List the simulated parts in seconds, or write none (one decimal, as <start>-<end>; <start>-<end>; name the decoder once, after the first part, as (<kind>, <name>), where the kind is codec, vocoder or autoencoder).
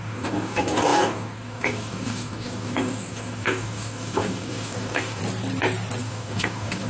0.0-5.2 (codec, DAC); 6.0-6.9